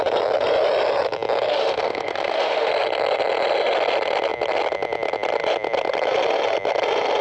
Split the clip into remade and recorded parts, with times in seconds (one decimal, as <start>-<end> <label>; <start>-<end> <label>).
0.0-1.5 recorded; 1.5-2.7 remade; 2.7-7.2 recorded